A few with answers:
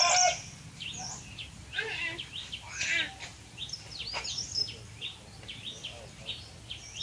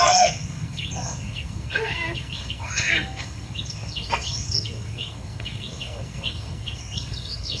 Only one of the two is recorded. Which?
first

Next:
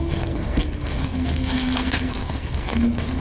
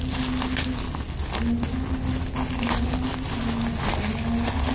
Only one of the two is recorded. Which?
second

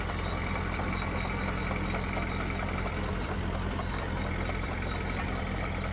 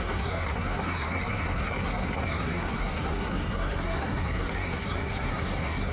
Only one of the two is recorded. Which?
first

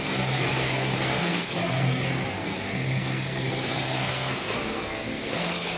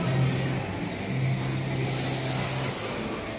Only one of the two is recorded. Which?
second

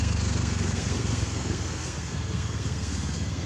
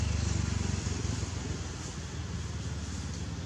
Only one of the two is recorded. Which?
second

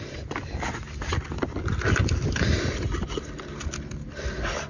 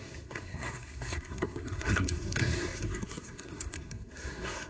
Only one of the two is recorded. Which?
first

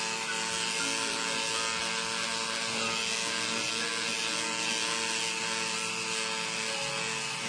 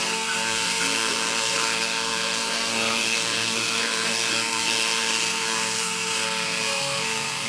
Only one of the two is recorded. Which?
first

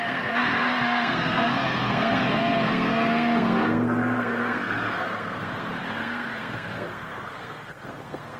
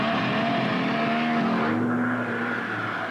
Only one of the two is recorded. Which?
second